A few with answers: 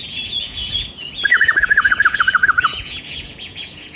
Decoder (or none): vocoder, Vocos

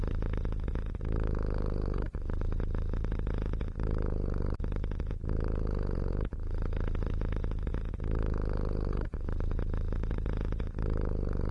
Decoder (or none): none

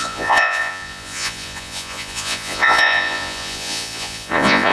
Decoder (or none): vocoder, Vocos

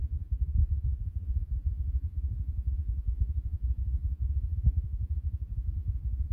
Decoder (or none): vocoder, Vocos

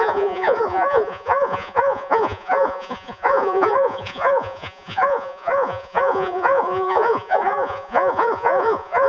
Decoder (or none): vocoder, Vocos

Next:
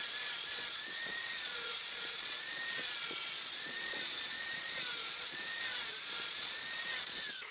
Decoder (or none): vocoder, Vocos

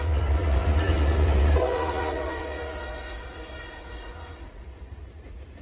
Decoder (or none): vocoder, Vocos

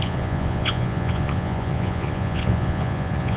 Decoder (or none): vocoder, Vocos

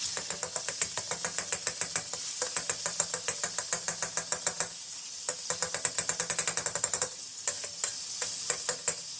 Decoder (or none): none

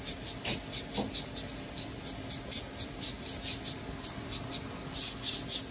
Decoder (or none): none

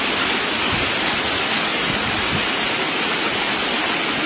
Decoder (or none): none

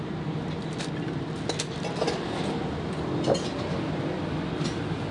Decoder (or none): none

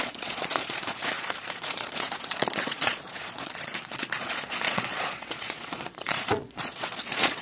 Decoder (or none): vocoder, Vocos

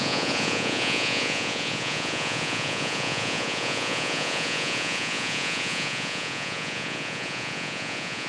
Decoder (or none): vocoder, Vocos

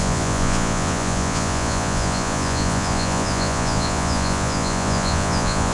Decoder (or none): vocoder, Vocos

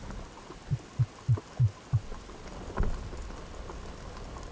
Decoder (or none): none